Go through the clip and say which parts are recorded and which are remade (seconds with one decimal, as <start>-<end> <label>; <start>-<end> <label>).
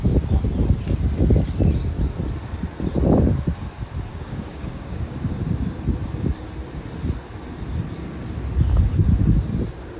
0.0-4.1 recorded; 4.1-5.3 remade; 5.3-10.0 recorded